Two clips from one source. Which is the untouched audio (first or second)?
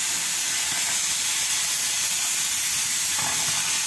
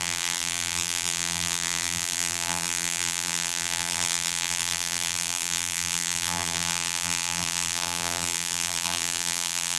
first